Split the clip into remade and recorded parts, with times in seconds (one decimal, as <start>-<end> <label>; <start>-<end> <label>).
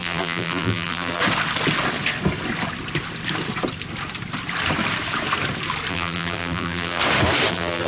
0.0-1.2 remade; 1.2-5.9 recorded; 5.9-7.0 remade; 7.0-7.5 recorded; 7.5-7.9 remade